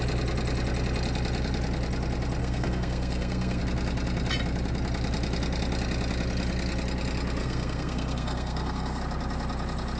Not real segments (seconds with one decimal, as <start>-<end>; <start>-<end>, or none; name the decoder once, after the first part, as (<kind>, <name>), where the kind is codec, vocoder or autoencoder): 2.4-3.6 (codec, SNAC); 7.4-9.0